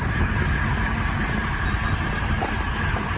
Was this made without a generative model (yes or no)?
no